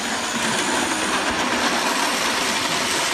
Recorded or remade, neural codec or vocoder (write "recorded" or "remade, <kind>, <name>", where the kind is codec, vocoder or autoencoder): recorded